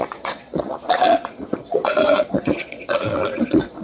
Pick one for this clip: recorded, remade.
remade